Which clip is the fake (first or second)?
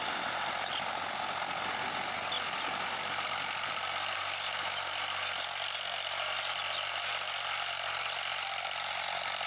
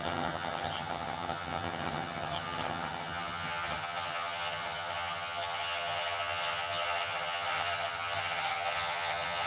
second